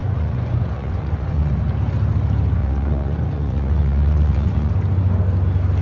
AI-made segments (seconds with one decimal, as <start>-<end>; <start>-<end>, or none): 0.0-1.5; 2.6-4.7